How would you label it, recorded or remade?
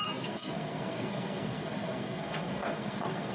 remade